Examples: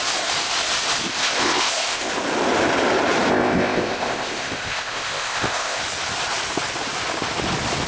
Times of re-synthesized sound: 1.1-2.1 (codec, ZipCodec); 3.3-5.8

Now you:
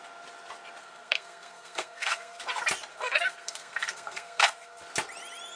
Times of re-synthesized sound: 0.8-2.4 (codec, SNAC); 2.9-4.8

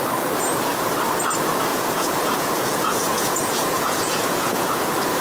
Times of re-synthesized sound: 1.7-4.7 (vocoder, Vocos)

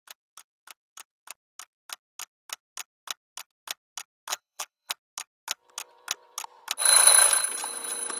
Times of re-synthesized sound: 4.3-4.9 (vocoder, BigVGAN v2)

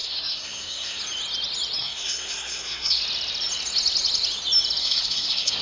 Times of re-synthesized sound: 0.0-1.0 (codec, SNAC); 1.8-3.0; 4.8-5.6

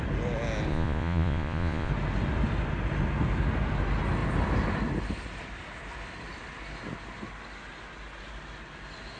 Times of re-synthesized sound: 0.7-1.9 (vocoder, Vocos)

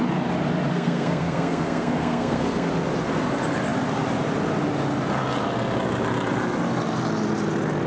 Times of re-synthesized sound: 0.7-2.7 (codec, SNAC)